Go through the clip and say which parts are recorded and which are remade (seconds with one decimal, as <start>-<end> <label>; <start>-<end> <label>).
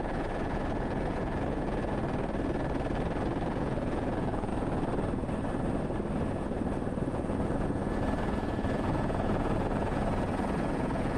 0.0-2.0 remade; 2.0-3.5 recorded; 3.5-4.5 remade; 4.5-7.1 recorded; 7.1-11.2 remade